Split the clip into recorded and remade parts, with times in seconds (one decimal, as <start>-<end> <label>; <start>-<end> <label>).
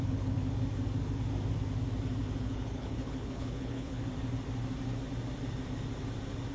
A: 0.0-0.4 remade; 0.4-2.4 recorded; 2.4-4.1 remade; 4.1-6.5 recorded